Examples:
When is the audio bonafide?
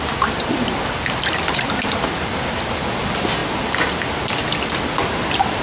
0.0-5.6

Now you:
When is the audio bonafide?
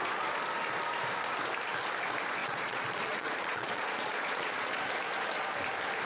0.0-2.4; 4.8-6.1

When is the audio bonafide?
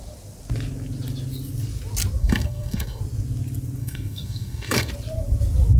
0.0-2.2; 3.0-3.8; 4.9-5.8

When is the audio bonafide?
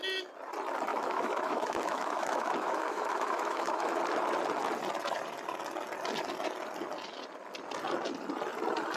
0.0-0.9; 4.0-9.0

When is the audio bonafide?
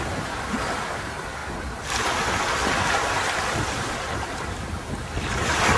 0.0-5.8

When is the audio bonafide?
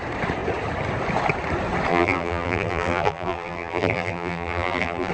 0.0-1.9